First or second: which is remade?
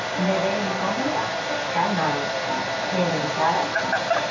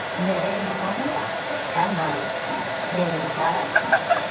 second